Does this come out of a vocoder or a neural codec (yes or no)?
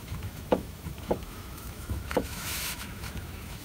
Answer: yes